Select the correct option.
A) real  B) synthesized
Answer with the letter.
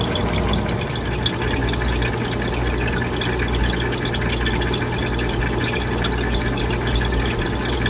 A